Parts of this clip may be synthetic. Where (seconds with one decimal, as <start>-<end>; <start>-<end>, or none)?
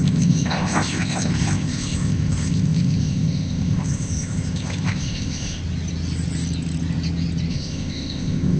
0.0-5.6; 7.5-8.6